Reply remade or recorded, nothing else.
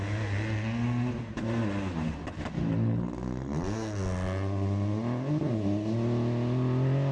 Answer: recorded